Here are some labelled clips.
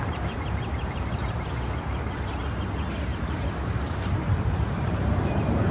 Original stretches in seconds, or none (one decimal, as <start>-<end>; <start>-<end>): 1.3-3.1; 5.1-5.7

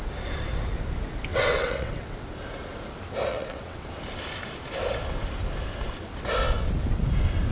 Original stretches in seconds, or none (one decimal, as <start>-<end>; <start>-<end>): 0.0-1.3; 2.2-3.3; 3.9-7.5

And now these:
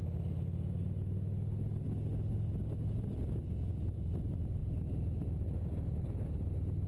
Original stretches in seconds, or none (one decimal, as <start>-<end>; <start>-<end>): 0.0-6.9

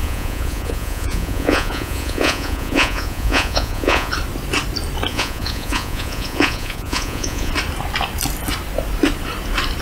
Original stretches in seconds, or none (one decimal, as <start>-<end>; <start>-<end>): 4.1-5.1; 7.5-9.8

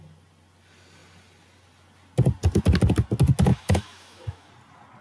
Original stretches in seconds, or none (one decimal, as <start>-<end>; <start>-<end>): 0.0-3.5; 4.5-5.0

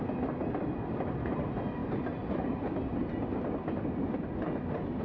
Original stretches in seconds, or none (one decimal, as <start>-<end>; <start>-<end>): 0.0-5.0